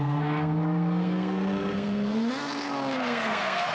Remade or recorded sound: remade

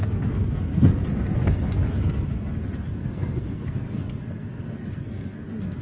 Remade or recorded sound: remade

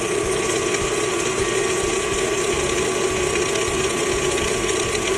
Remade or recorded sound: recorded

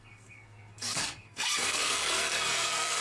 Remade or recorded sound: remade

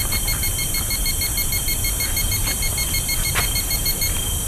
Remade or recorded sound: recorded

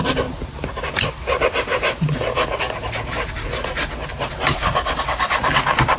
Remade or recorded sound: recorded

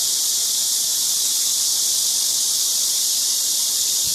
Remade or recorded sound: recorded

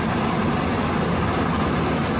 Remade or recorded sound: recorded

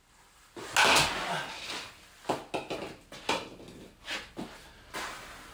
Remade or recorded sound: recorded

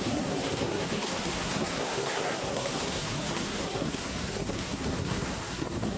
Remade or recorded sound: remade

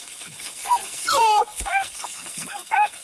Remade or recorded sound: remade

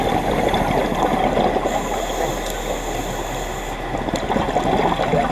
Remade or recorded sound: recorded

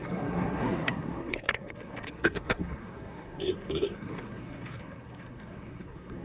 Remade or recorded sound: remade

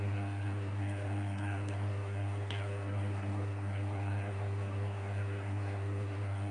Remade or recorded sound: remade